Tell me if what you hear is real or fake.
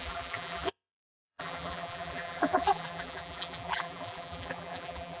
fake